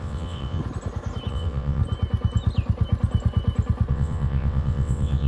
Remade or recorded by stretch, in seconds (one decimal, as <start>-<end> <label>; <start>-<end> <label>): 0.0-0.6 remade; 0.6-1.3 recorded; 1.3-1.8 remade; 1.8-3.9 recorded; 3.9-5.3 remade